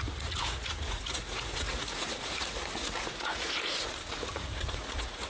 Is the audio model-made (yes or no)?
yes